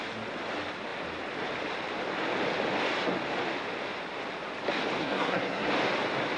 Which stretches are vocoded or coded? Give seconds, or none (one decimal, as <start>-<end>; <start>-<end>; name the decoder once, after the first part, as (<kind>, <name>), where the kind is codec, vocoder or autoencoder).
5.0-5.7 (codec, SNAC)